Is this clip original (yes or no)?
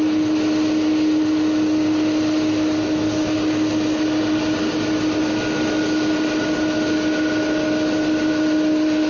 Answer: yes